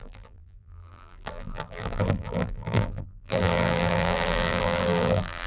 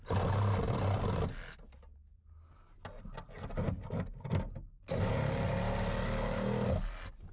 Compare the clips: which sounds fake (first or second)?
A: first